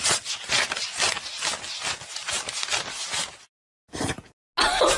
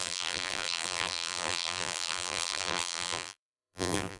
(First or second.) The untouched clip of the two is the first